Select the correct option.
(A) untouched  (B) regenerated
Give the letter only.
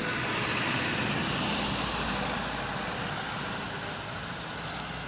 A